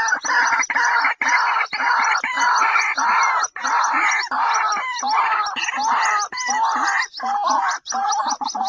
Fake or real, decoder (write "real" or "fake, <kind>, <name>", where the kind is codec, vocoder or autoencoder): real